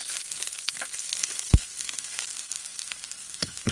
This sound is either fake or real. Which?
fake